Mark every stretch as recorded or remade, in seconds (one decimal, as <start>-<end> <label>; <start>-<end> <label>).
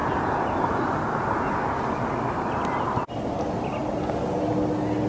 0.0-5.1 recorded